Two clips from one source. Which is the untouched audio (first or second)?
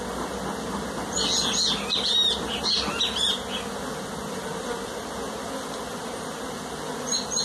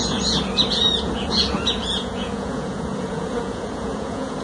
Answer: first